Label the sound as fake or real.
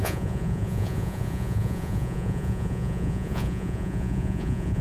fake